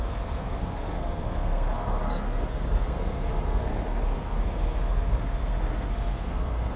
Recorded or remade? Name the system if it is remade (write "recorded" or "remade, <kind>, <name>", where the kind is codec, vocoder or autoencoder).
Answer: remade, codec, SNAC